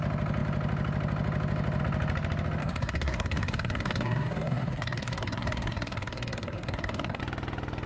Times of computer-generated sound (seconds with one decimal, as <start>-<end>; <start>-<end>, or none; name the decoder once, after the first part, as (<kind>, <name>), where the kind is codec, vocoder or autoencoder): 2.6-7.2 (codec, SNAC)